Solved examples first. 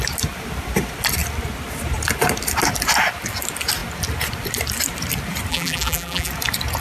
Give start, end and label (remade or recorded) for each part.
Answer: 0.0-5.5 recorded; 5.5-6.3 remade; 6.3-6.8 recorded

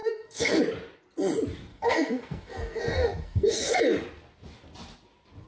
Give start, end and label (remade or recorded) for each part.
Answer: 0.0-0.6 remade; 0.6-1.7 recorded; 1.7-3.8 remade; 3.8-5.5 recorded

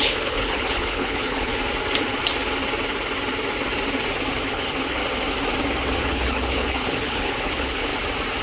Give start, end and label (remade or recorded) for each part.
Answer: 0.0-1.5 remade; 1.5-4.5 recorded; 4.5-5.0 remade; 5.0-6.0 recorded; 6.0-7.9 remade; 7.9-8.4 recorded

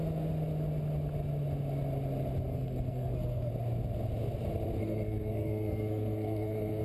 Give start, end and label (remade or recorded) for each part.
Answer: 0.0-2.5 recorded; 2.5-3.5 remade; 3.5-4.8 recorded; 4.8-6.8 remade

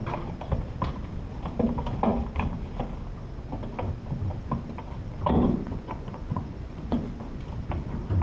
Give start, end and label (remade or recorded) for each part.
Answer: 0.0-5.6 recorded; 5.6-7.4 remade; 7.4-8.2 recorded

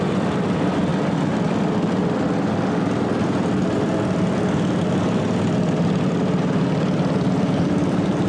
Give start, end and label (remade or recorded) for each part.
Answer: 0.0-8.3 remade

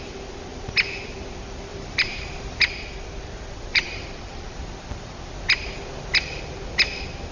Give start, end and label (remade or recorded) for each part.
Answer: 0.0-1.7 recorded; 1.7-2.6 remade; 2.6-3.7 recorded; 3.7-4.6 remade; 4.6-7.3 recorded